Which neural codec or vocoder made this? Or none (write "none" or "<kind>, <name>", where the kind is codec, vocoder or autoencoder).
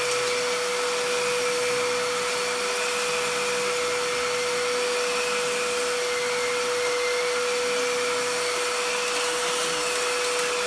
none